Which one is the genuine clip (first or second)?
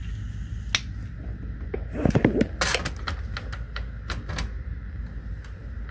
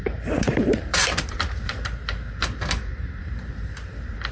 first